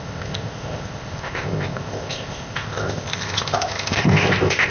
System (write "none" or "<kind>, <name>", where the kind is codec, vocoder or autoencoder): codec, ZipCodec